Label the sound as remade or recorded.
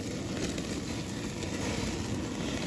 recorded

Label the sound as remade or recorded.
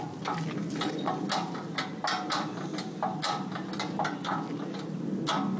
recorded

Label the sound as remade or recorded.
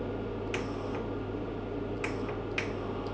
recorded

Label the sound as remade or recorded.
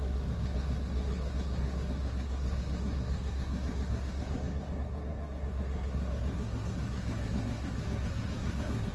remade